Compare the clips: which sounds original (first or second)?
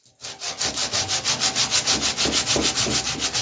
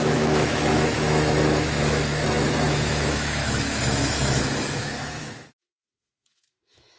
first